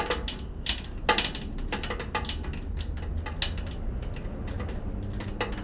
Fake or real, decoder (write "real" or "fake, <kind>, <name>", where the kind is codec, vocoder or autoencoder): real